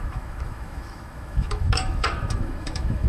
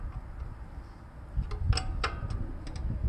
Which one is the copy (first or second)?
first